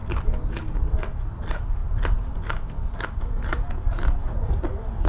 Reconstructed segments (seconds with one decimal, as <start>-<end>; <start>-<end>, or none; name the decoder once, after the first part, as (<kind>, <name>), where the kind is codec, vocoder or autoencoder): none